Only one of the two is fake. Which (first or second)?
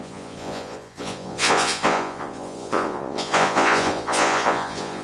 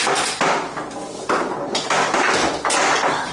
first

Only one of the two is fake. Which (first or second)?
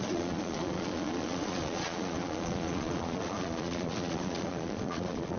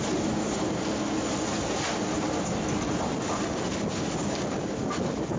first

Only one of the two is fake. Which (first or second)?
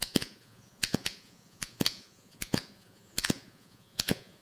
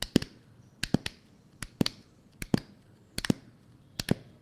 first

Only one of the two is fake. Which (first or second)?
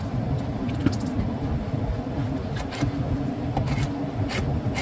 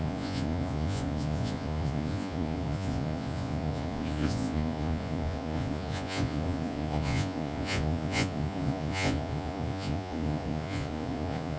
second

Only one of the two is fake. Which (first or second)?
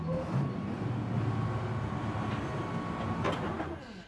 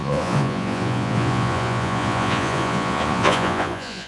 second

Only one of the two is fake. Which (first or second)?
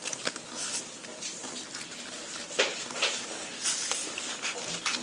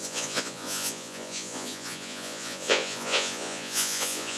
second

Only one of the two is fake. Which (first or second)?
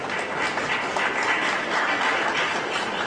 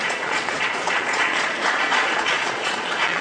second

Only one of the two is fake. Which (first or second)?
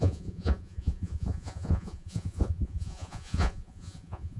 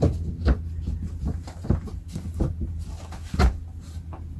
first